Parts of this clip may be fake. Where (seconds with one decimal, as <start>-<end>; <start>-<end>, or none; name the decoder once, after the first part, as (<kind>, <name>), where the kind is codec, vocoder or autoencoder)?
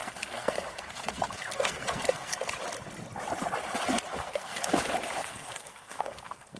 0.0-2.5 (codec, SNAC); 4.1-4.7; 5.2-6.6